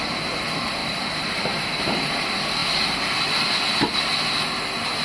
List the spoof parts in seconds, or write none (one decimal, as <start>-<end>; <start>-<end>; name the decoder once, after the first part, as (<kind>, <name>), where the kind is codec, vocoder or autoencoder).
0.8-2.1 (vocoder, BigVGAN v2); 2.6-3.5